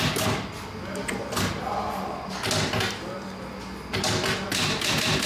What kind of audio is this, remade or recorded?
recorded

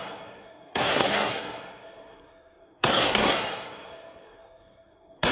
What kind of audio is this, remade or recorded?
remade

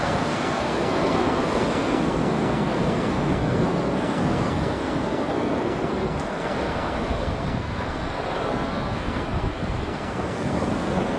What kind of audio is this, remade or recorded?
remade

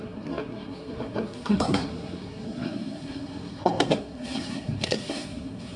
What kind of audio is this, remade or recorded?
remade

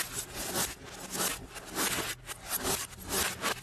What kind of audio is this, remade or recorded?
recorded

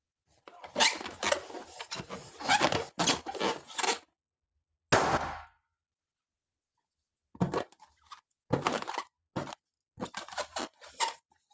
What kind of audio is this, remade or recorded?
recorded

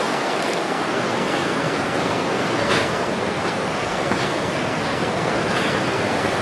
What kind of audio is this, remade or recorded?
remade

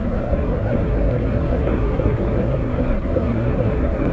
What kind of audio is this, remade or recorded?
remade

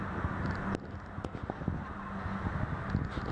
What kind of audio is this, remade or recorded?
recorded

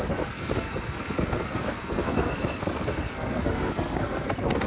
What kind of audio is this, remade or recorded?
remade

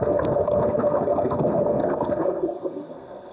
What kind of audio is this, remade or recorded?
remade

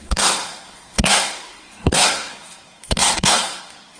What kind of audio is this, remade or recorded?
remade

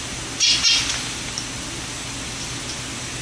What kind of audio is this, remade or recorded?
recorded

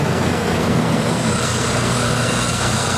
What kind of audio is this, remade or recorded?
remade